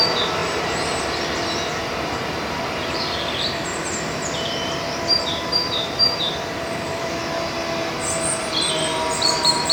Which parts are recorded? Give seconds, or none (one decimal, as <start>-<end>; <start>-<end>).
7.2-8.4